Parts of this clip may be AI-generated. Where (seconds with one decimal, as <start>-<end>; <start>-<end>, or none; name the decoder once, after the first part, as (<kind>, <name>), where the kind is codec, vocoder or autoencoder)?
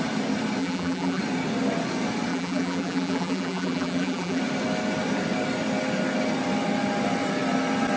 0.6-1.2 (vocoder, BigVGAN v2); 2.3-4.4